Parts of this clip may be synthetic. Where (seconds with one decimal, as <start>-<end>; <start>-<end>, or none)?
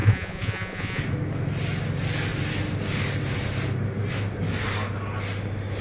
0.0-1.0